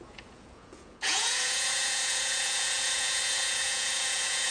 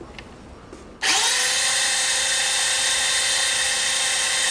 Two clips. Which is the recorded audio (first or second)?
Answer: second